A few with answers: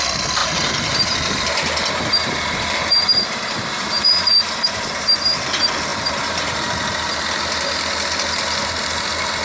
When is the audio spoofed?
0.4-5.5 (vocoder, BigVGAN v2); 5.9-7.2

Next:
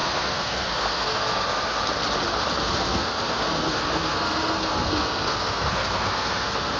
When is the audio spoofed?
0.0-1.8 (codec, SNAC); 2.6-6.8

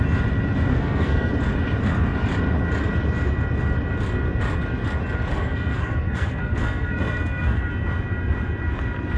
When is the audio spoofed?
0.7-1.3 (codec, SNAC); 5.3-7.7

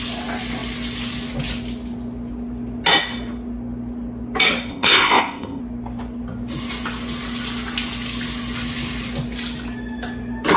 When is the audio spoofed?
4.7-5.6 (codec, ZipCodec)

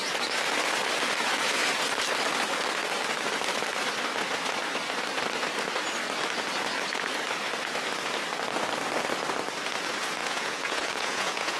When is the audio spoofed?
10.2-11.6 (vocoder, Vocos)

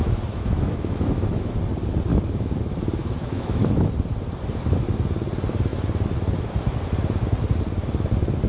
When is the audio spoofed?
0.0-1.5 (autoencoder, DAC-VAE); 2.1-2.6; 3.0-3.9